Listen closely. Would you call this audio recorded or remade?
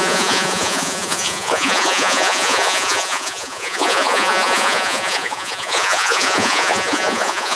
remade